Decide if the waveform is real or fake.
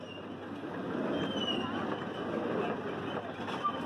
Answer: real